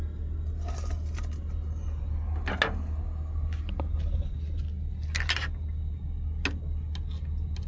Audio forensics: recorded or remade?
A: recorded